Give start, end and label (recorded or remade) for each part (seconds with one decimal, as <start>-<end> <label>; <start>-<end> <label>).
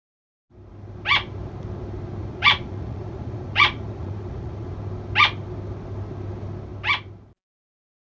0.0-2.2 recorded; 2.2-4.7 remade; 4.7-8.1 recorded